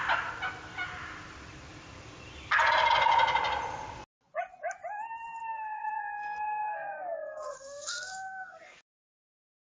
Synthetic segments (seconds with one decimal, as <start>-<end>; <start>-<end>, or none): 5.4-9.0